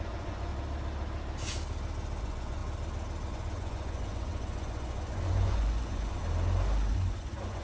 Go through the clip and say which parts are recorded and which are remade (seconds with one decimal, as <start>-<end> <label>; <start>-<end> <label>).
0.0-0.5 remade; 0.5-2.2 recorded; 2.2-2.6 remade; 2.6-3.3 recorded; 3.3-6.2 remade; 6.2-6.9 recorded; 6.9-7.6 remade